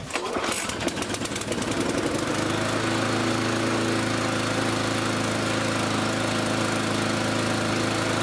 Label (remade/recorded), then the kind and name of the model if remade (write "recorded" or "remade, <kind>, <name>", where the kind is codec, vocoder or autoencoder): recorded